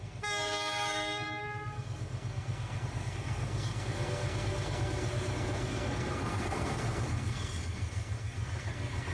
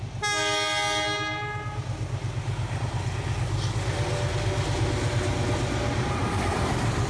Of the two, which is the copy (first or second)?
first